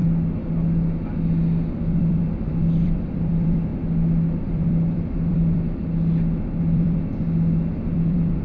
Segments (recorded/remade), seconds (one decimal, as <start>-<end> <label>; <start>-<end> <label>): 0.0-1.7 recorded; 1.7-3.7 remade; 3.7-4.4 recorded; 4.4-5.8 remade; 5.8-6.6 recorded; 6.6-7.1 remade; 7.1-7.7 recorded; 7.7-8.4 remade